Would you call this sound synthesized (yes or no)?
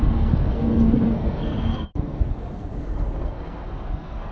yes